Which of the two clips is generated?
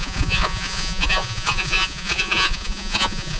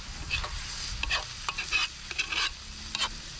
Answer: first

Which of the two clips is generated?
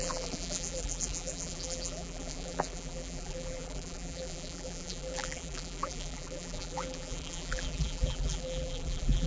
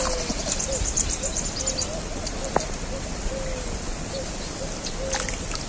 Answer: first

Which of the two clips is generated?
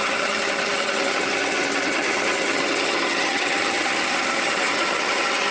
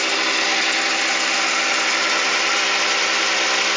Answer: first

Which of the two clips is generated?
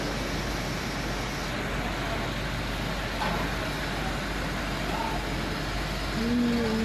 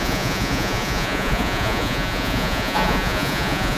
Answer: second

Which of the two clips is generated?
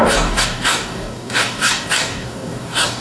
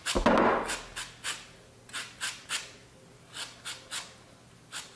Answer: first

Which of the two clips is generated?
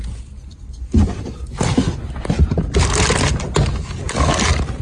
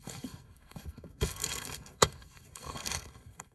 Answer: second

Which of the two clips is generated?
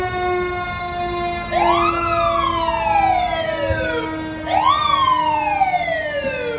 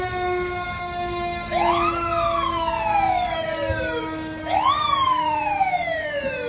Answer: second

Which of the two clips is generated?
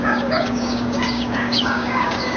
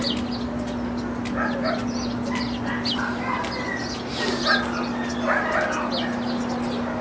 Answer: first